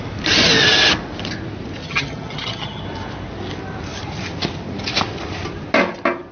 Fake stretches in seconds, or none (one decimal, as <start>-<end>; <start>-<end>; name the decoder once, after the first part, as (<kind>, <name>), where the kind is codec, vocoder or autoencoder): 1.8-2.8 (vocoder, HiFi-GAN)